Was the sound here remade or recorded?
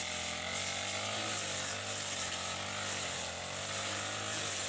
recorded